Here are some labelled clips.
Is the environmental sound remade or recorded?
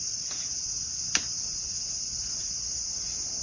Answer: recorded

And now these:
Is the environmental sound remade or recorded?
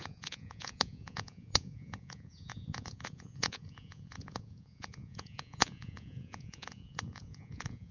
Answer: remade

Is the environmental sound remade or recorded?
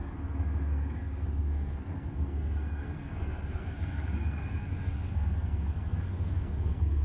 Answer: remade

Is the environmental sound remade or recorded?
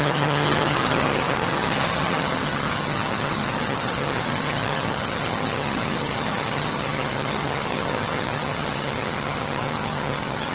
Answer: remade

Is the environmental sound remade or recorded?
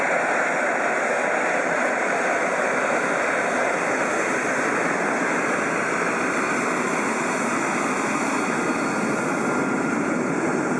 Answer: recorded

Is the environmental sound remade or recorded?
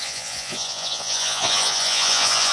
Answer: remade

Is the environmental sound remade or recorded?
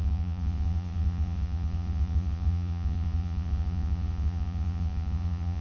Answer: remade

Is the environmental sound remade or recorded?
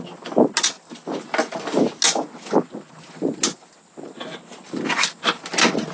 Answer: recorded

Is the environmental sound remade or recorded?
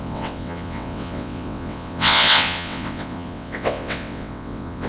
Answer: remade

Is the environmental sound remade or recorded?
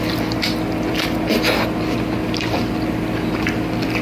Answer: recorded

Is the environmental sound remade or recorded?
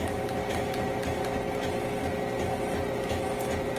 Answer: recorded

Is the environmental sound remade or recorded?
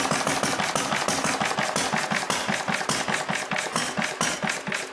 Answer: recorded